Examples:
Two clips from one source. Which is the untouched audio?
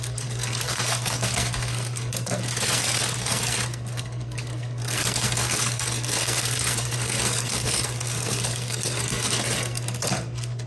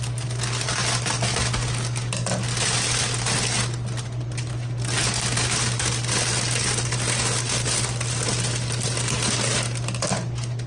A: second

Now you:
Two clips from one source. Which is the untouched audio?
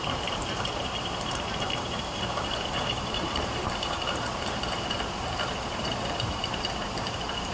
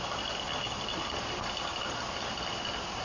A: second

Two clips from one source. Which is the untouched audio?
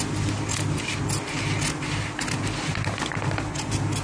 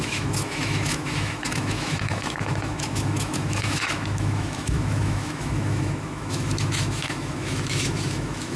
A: first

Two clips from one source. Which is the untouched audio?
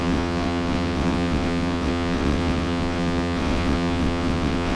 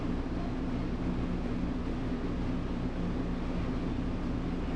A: second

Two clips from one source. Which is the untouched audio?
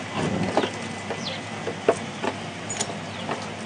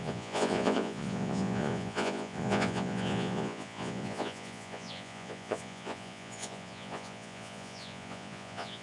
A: first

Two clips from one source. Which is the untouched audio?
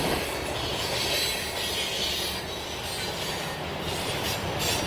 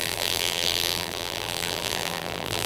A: first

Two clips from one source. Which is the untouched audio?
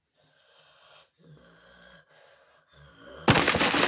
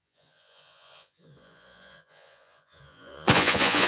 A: first